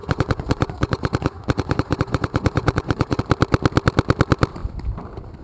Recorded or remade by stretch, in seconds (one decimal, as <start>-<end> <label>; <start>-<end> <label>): 0.0-3.2 remade; 3.2-5.4 recorded